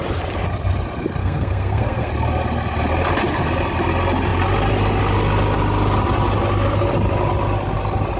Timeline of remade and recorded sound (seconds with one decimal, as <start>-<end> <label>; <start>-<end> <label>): 0.0-1.2 recorded; 1.2-2.1 remade; 2.1-8.2 recorded